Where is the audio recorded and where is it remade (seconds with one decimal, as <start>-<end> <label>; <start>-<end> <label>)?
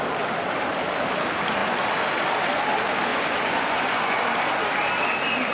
0.0-3.1 recorded; 3.1-4.2 remade; 4.2-5.5 recorded